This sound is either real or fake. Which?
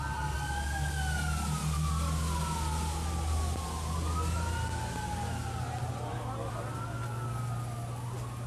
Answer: real